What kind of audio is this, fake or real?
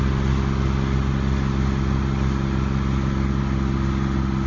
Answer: real